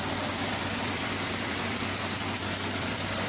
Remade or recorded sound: remade